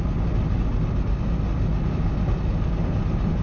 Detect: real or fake real